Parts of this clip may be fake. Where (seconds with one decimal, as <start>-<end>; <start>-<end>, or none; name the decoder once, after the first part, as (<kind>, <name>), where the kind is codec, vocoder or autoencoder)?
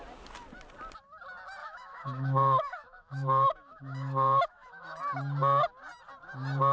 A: 1.6-5.0 (autoencoder, DAC-VAE)